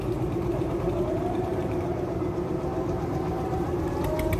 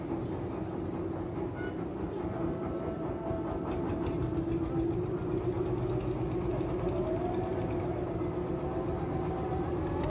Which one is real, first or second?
second